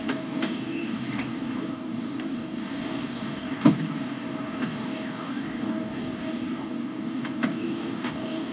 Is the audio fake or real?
fake